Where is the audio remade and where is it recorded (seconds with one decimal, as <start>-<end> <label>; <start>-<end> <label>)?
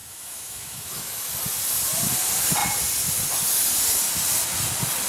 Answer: 0.0-1.3 remade; 1.3-5.1 recorded